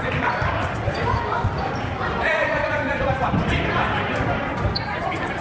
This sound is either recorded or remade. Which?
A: recorded